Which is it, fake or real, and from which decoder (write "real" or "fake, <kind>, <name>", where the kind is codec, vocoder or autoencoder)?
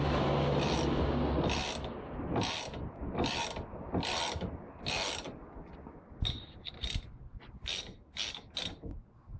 real